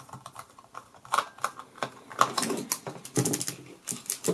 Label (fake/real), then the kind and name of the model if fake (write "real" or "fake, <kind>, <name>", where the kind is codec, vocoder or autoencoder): real